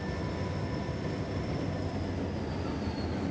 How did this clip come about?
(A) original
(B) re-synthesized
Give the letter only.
A